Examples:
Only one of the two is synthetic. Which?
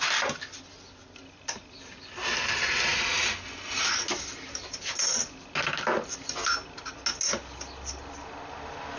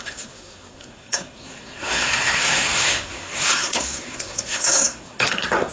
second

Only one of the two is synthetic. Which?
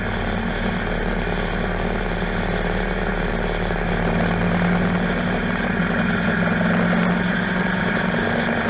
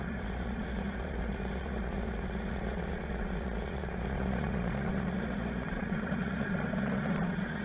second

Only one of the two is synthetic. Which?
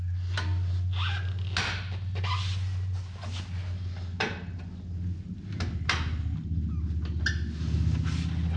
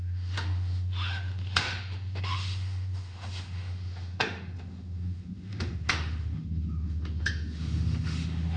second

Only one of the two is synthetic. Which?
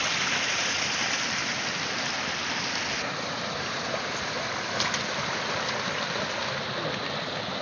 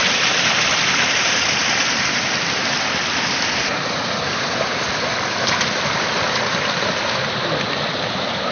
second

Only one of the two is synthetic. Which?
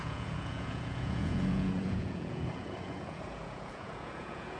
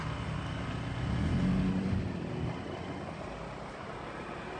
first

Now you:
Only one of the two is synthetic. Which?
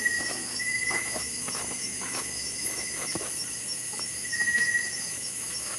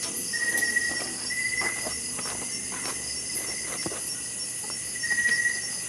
first